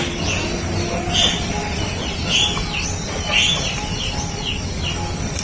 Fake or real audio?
real